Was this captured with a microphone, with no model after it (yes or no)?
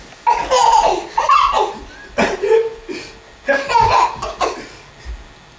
yes